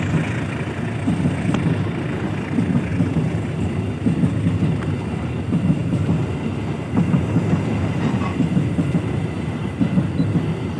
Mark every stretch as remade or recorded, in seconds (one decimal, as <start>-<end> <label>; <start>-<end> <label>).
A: 0.0-10.8 recorded